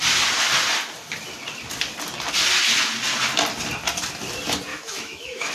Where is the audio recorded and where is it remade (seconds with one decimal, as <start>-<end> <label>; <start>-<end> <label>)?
0.0-4.7 recorded; 4.7-5.5 remade